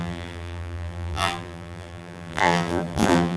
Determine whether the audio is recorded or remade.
remade